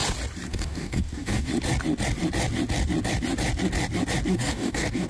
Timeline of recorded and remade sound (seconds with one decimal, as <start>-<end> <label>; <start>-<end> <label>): 0.0-0.5 recorded; 0.5-1.5 remade; 1.5-4.3 recorded; 4.3-5.1 remade